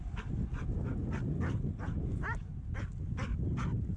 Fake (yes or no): no